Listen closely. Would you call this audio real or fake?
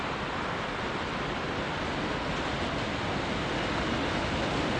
real